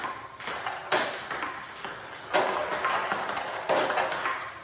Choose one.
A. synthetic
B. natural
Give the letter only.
B